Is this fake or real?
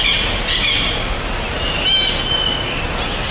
real